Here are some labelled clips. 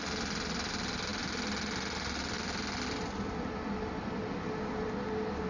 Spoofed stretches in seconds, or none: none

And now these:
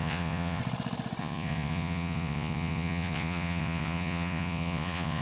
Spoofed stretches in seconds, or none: 0.0-0.6 (vocoder, Vocos); 1.2-5.2

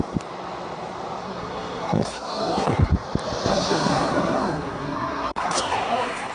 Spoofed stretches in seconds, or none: 1.2-2.9 (codec, SNAC); 3.5-6.3

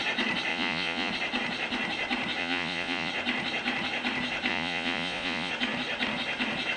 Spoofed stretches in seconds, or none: 0.5-1.1 (vocoder, Vocos); 2.4-3.1; 4.5-5.5

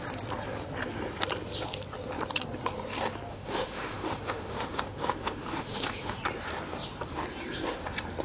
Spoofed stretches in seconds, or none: 3.3-6.2 (autoencoder, DAC-VAE)